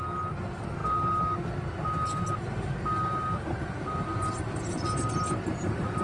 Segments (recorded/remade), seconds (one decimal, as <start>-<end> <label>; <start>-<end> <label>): 0.0-6.0 recorded